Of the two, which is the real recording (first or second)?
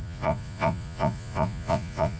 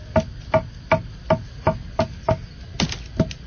second